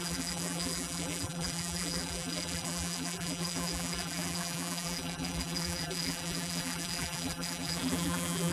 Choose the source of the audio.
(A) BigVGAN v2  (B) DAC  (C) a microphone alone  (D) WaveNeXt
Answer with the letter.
A